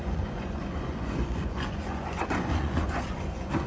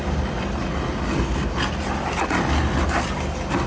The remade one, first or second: first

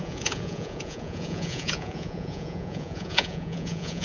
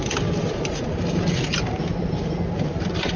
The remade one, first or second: first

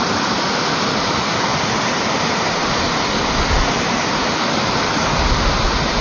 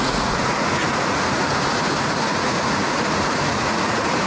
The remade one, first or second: second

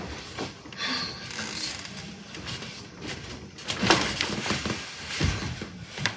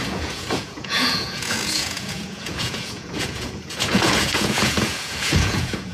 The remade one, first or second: second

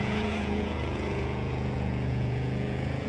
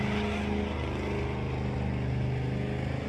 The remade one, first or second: first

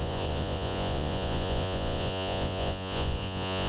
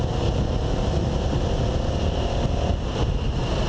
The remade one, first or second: first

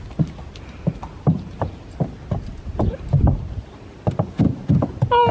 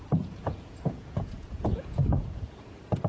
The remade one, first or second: second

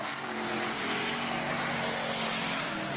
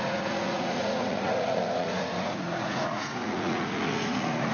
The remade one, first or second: second